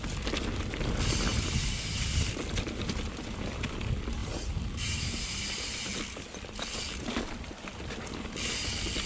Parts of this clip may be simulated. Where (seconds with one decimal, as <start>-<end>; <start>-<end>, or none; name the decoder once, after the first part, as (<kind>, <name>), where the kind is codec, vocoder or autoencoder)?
1.3-2.3 (vocoder, BigVGAN v2); 4.2-5.8